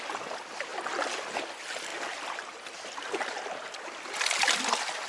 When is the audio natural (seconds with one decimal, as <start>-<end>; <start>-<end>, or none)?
0.0-5.1